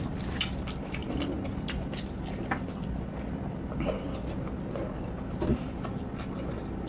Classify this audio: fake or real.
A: real